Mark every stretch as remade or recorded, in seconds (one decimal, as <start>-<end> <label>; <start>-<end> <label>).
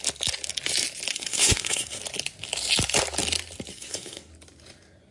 0.0-1.1 recorded; 1.1-2.0 remade; 2.0-3.7 recorded; 3.7-4.3 remade; 4.3-5.1 recorded